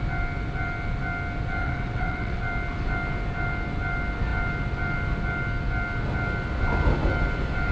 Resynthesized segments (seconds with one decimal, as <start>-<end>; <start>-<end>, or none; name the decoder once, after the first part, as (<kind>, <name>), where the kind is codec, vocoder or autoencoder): 1.6-2.4 (vocoder, WaveNeXt)